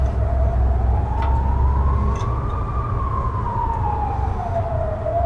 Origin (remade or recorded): recorded